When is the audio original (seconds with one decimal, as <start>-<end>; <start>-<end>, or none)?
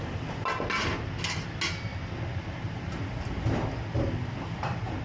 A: 0.0-1.9